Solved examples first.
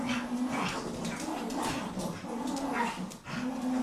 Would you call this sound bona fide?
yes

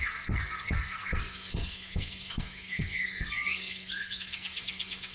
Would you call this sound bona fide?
no